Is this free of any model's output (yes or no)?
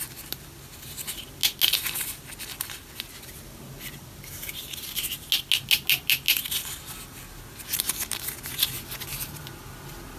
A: yes